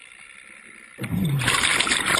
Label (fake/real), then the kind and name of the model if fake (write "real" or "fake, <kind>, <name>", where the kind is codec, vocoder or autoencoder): real